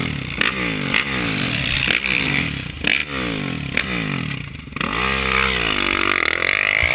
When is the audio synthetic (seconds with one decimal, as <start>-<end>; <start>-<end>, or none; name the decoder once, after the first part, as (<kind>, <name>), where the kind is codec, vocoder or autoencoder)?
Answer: none